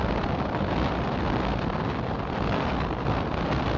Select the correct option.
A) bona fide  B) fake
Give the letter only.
A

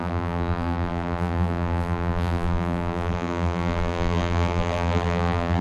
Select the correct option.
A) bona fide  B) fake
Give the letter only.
B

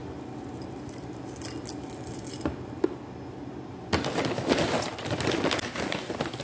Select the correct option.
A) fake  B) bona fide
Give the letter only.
B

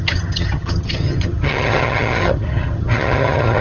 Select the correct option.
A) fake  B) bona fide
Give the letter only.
A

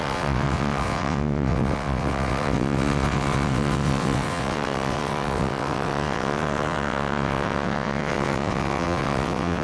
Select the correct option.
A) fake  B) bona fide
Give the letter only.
A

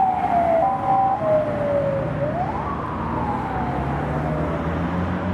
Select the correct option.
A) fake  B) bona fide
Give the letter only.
B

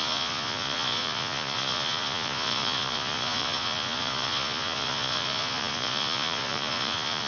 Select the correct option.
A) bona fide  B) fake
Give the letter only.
B